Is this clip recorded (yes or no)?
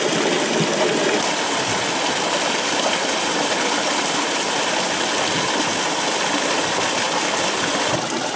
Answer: yes